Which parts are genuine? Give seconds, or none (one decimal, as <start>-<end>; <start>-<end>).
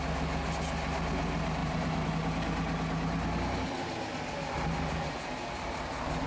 0.0-1.6; 2.1-6.3